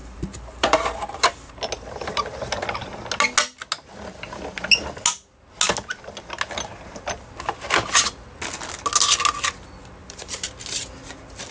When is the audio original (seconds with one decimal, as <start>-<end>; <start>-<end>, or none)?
1.5-10.0; 10.5-11.5

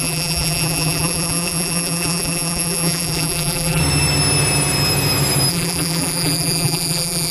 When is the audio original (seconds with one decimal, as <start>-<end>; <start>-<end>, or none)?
3.8-5.5

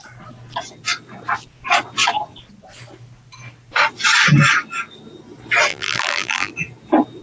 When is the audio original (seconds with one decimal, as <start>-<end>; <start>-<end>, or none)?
0.0-5.7; 6.5-7.2

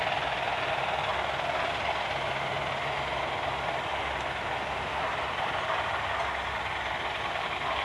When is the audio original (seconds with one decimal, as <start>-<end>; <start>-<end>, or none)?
0.0-7.8

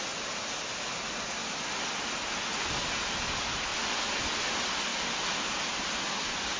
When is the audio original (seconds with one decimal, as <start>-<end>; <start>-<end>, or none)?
0.0-1.4; 2.0-3.7; 4.2-6.6

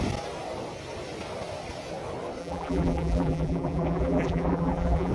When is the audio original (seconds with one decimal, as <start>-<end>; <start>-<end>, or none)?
0.0-2.4